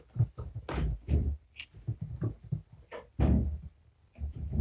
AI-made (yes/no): no